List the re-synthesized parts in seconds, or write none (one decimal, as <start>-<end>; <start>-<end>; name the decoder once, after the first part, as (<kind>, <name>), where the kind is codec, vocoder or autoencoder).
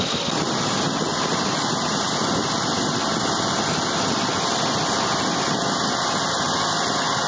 none